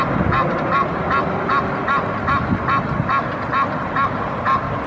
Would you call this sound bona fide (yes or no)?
yes